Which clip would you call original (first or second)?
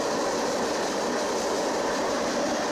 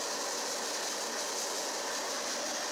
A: second